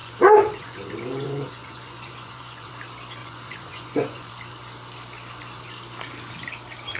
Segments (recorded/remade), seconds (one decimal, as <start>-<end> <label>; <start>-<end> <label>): 0.0-2.7 remade; 2.7-3.2 recorded; 3.2-4.3 remade; 4.3-7.0 recorded